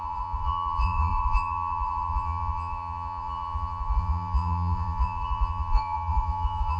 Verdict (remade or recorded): remade